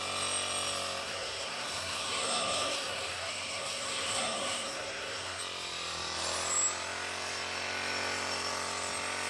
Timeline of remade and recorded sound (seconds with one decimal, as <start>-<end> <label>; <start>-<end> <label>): 0.0-1.0 recorded; 1.0-5.4 remade; 5.4-9.3 recorded